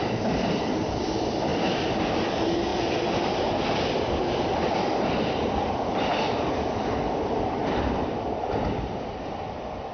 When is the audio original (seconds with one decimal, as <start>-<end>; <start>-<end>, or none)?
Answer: 1.5-2.2